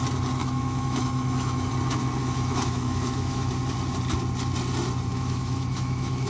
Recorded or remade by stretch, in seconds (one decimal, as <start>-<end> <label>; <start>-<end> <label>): 0.0-0.4 recorded; 0.4-1.7 remade; 1.7-2.2 recorded; 2.2-3.5 remade; 3.5-5.1 recorded; 5.1-6.3 remade